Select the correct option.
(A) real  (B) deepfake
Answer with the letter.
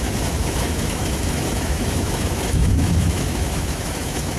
B